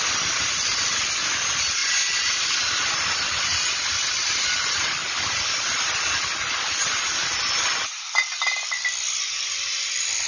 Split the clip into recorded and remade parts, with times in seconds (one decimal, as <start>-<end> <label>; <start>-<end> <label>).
0.0-10.3 recorded